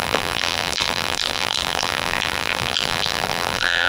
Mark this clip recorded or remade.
remade